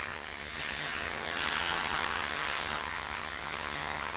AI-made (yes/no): yes